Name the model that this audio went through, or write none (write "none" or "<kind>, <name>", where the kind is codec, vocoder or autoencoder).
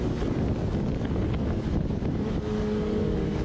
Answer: codec, DAC